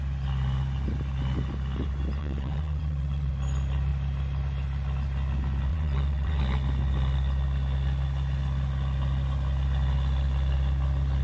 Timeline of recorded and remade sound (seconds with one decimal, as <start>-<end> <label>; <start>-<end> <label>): 0.0-2.2 recorded; 2.2-3.3 remade; 3.3-5.7 recorded; 5.7-6.4 remade; 6.4-11.2 recorded